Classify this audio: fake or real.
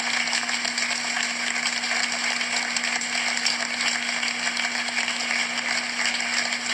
real